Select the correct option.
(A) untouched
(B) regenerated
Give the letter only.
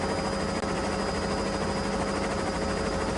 A